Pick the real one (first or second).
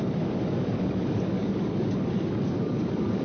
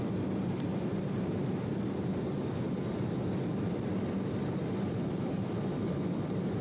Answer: second